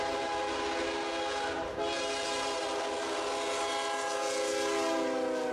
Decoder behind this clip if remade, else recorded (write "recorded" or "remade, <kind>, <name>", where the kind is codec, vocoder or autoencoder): recorded